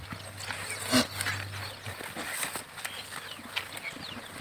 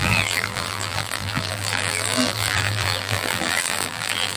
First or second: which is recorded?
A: first